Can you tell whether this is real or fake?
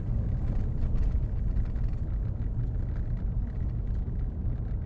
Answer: real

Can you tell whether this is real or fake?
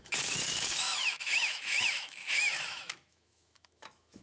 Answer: fake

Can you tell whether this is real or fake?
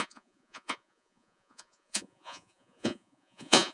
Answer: fake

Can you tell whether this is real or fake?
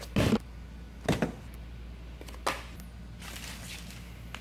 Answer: real